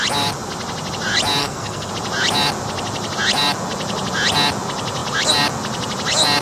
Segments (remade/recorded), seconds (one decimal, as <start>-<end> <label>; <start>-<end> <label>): 0.0-1.4 recorded; 1.4-1.9 remade; 1.9-6.4 recorded